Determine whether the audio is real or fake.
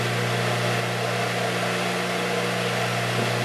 real